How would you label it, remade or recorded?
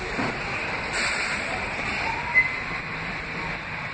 recorded